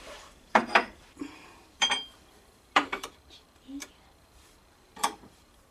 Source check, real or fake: fake